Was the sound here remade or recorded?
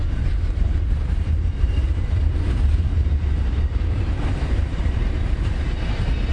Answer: remade